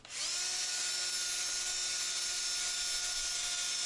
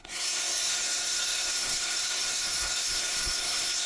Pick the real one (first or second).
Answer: first